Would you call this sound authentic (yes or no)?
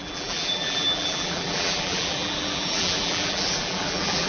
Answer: no